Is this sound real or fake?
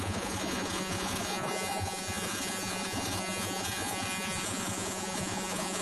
fake